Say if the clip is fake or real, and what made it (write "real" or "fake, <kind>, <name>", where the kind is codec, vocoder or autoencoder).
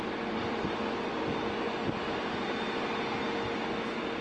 real